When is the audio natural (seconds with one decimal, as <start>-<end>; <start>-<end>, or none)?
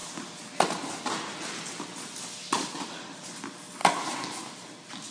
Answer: 0.0-5.1